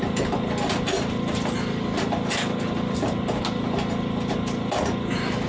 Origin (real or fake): real